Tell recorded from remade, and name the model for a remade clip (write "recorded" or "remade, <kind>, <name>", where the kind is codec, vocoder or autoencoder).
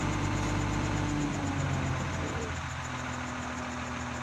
remade, vocoder, BigVGAN v2